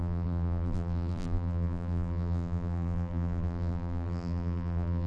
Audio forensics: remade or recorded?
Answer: remade